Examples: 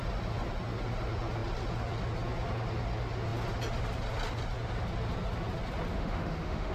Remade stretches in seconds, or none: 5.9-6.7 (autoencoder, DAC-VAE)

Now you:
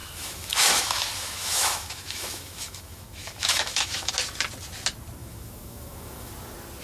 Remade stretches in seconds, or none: 0.0-4.1 (autoencoder, DAC-VAE); 5.2-6.3

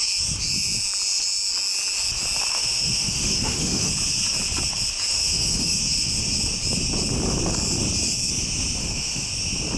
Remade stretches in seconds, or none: 2.5-3.9 (autoencoder, DAC-VAE); 5.1-5.8; 8.8-9.3

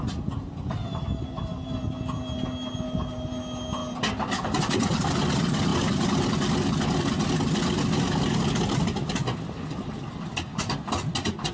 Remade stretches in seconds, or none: none

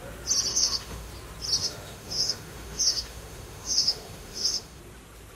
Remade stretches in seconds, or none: 0.5-1.1 (autoencoder, DAC-VAE); 1.6-4.8